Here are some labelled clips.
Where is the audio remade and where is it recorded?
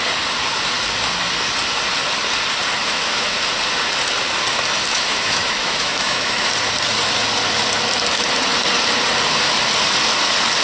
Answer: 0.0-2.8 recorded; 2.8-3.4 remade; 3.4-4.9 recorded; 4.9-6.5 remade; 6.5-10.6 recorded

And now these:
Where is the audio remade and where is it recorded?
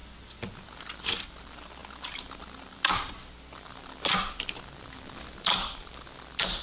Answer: 0.0-6.6 recorded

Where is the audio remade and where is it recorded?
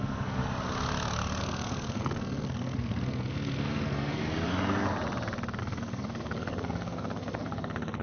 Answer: 0.0-0.4 remade; 0.4-1.4 recorded; 1.4-4.2 remade; 4.2-5.6 recorded; 5.6-8.0 remade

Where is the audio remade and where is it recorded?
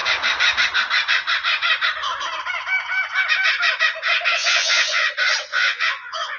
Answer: 0.0-4.4 recorded; 4.4-5.1 remade; 5.1-5.5 recorded; 5.5-6.4 remade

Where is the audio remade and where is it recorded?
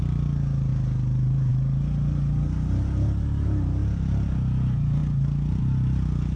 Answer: 0.0-6.4 recorded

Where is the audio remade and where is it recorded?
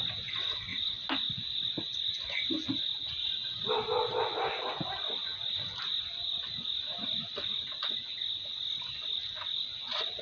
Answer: 0.0-10.2 recorded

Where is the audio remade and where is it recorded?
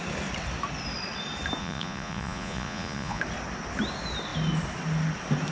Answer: 0.0-1.6 recorded; 1.6-3.2 remade; 3.2-5.5 recorded